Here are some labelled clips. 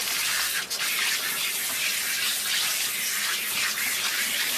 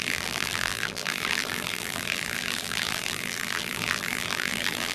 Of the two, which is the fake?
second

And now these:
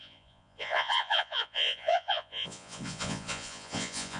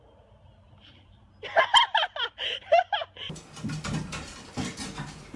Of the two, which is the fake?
first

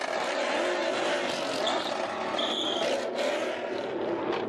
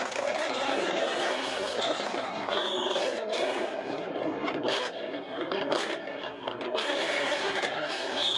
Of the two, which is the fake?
second